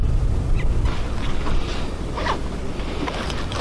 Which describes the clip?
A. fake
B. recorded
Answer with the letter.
B